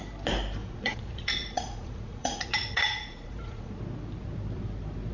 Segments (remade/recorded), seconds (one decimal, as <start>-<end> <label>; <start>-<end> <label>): 0.0-0.6 recorded; 0.6-3.7 remade; 3.7-5.1 recorded